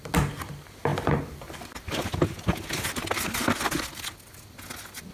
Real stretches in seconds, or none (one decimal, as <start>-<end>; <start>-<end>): 0.0-5.1